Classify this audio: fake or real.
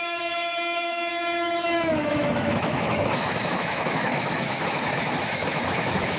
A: fake